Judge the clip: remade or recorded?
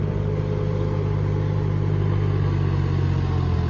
recorded